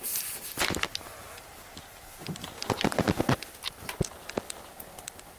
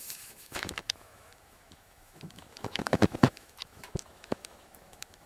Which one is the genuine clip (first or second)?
first